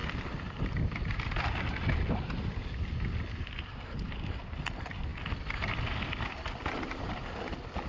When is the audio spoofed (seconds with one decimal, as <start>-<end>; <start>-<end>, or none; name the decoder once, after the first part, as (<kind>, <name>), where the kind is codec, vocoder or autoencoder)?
5.1-7.0 (vocoder, BigVGAN v2)